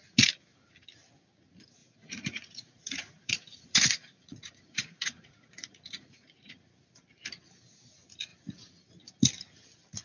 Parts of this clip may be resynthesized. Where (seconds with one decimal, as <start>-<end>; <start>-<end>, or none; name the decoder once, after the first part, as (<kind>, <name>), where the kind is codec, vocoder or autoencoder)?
1.8-6.5 (vocoder, Vocos)